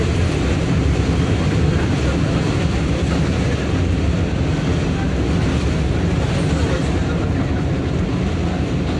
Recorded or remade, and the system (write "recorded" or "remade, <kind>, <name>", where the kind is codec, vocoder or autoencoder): recorded